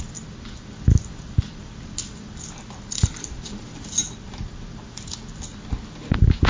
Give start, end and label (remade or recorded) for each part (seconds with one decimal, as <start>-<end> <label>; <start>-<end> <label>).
0.0-6.5 recorded